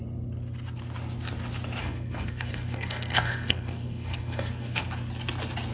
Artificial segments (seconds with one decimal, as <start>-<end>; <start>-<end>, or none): 1.8-4.8